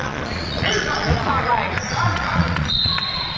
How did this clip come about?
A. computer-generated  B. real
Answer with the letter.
A